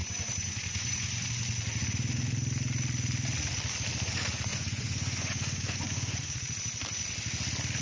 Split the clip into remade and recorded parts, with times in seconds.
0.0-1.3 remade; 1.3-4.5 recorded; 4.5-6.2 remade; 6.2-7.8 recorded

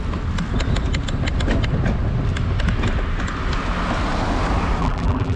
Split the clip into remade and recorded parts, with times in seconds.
0.0-4.8 recorded; 4.8-5.4 remade

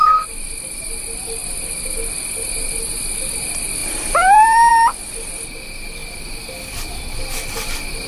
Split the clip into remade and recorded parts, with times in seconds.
0.0-3.8 recorded; 3.8-4.7 remade; 4.7-8.1 recorded

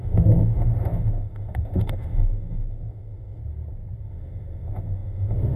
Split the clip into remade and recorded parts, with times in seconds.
0.0-3.4 remade; 3.4-4.1 recorded; 4.1-5.6 remade

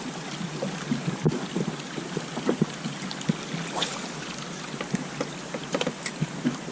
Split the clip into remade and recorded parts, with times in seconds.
0.0-6.7 recorded

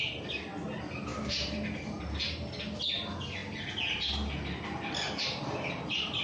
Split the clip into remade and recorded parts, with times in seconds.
0.0-6.2 recorded

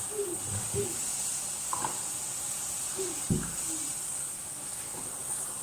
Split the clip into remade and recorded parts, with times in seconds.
0.0-5.6 recorded